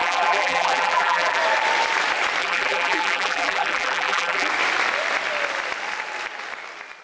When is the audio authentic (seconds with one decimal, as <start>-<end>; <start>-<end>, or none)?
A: 1.4-2.4; 4.5-7.0